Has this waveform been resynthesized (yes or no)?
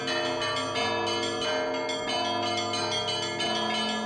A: no